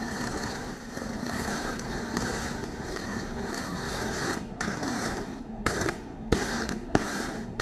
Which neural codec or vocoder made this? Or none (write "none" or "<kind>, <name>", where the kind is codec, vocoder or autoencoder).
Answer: codec, SNAC